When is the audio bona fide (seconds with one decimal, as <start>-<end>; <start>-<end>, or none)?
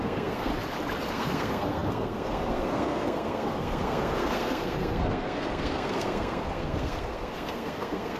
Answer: 0.5-1.1